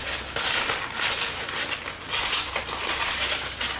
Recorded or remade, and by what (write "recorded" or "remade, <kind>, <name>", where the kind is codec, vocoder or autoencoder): recorded